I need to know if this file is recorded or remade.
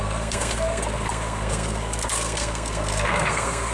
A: remade